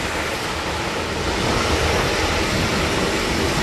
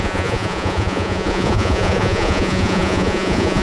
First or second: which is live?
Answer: first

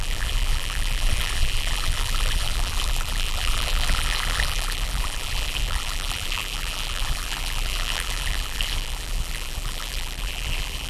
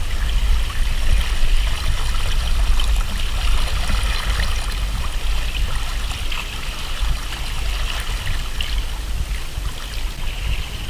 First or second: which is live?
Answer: second